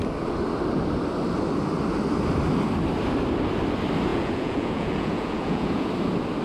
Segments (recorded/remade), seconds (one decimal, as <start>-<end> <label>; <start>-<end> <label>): 0.0-4.1 recorded; 4.1-5.9 remade; 5.9-6.4 recorded

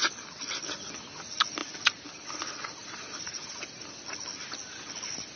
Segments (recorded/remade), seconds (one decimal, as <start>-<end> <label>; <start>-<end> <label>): 0.0-2.8 recorded; 2.8-3.8 remade; 3.8-5.4 recorded

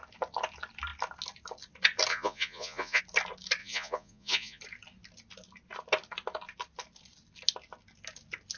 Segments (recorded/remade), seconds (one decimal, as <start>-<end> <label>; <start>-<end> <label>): 0.0-2.1 recorded; 2.1-3.0 remade; 3.0-3.6 recorded; 3.6-4.6 remade; 4.6-8.6 recorded

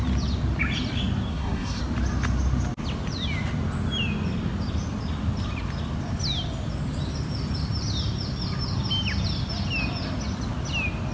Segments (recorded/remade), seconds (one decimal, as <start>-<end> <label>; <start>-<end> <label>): 0.0-1.3 recorded; 1.3-1.8 remade; 1.8-11.1 recorded

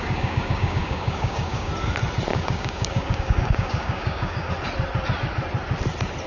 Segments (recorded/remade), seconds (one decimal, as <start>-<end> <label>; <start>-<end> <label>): 0.0-1.7 remade; 1.7-2.3 recorded; 2.3-4.5 remade; 4.5-6.3 recorded